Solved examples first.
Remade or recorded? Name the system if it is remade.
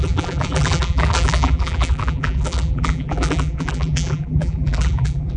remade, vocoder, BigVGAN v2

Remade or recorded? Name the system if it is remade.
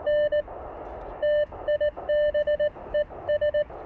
recorded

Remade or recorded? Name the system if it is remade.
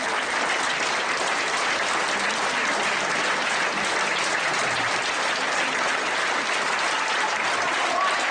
remade, vocoder, BigVGAN v2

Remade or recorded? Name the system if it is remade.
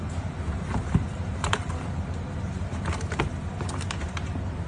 remade, vocoder, BigVGAN v2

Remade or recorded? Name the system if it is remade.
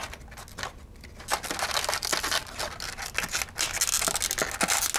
recorded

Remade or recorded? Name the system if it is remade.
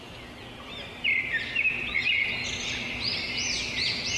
recorded